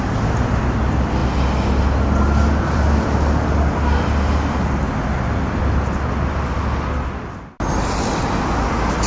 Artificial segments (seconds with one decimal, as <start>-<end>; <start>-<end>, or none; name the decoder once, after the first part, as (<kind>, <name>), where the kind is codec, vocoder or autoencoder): none